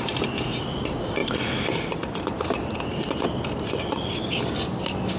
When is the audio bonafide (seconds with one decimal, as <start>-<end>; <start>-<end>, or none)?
0.0-5.2